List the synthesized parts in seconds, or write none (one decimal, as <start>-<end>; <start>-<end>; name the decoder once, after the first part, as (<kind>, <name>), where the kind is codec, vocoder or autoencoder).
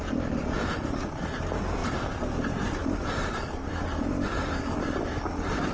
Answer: 1.8-3.5 (vocoder, BigVGAN v2)